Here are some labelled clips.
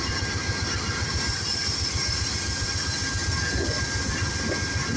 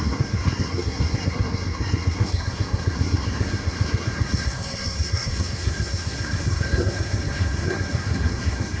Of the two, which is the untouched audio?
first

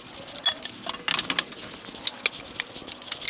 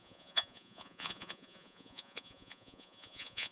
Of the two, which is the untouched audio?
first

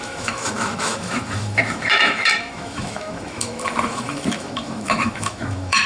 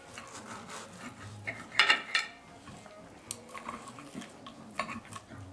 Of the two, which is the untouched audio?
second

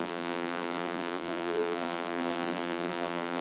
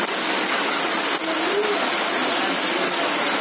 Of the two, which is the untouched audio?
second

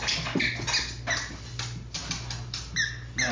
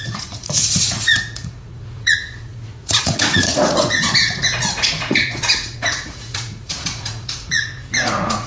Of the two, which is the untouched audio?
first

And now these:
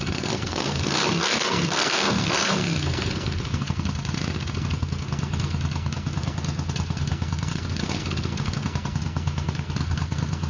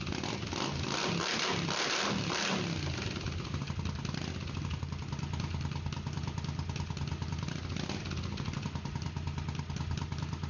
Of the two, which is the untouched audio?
second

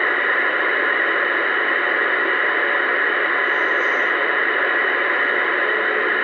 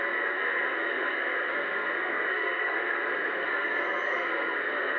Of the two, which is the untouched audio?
first